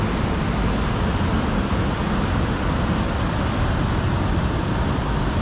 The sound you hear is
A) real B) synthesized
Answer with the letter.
A